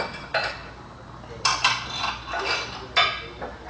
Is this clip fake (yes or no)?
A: no